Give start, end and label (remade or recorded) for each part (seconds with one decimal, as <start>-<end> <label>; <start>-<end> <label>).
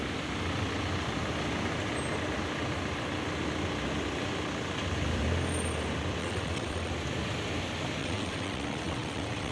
0.0-6.2 recorded; 6.2-6.9 remade; 6.9-8.0 recorded; 8.0-9.5 remade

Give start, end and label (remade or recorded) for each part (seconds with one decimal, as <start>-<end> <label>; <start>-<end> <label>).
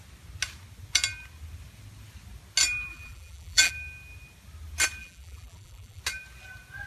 0.0-2.9 recorded; 2.9-3.7 remade; 3.7-5.0 recorded; 5.0-6.0 remade; 6.0-6.9 recorded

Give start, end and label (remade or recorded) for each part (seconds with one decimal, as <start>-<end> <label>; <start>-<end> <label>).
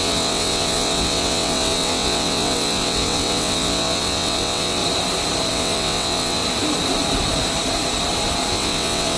0.0-4.8 remade; 4.8-5.5 recorded; 5.5-6.4 remade; 6.4-8.5 recorded; 8.5-9.2 remade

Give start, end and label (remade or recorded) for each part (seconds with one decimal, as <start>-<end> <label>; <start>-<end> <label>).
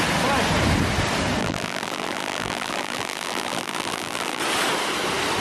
0.0-1.4 recorded; 1.4-4.4 remade; 4.4-5.4 recorded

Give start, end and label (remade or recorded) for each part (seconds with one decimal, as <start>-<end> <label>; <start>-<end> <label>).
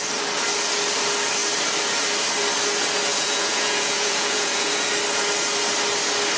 0.0-3.1 recorded; 3.1-4.9 remade; 4.9-6.4 recorded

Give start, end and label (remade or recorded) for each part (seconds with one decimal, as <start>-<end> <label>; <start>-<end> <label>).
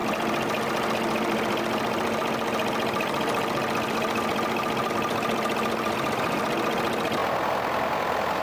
0.0-8.4 recorded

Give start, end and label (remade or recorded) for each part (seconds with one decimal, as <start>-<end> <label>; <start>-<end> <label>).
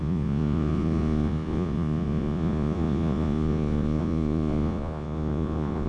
0.0-5.9 remade